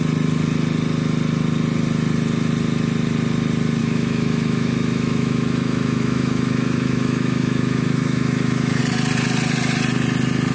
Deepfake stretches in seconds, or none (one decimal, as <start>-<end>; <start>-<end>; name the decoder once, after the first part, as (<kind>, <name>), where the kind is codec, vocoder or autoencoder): 3.8-8.8 (autoencoder, DAC-VAE)